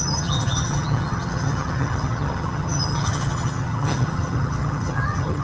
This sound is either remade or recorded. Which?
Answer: remade